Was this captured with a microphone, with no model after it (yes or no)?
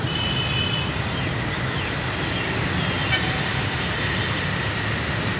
yes